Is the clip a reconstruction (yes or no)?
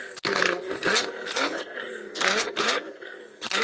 yes